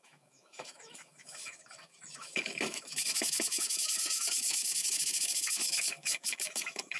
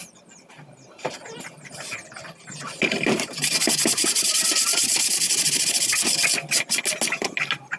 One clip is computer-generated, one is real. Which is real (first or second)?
second